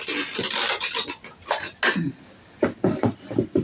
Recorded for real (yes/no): yes